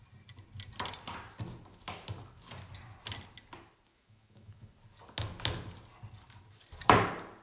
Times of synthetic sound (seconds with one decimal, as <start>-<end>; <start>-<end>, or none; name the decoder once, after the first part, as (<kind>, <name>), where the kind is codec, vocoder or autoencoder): 3.9-4.7 (autoencoder, DAC-VAE)